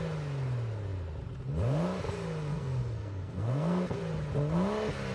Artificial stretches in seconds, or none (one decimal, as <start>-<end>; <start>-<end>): 2.5-4.0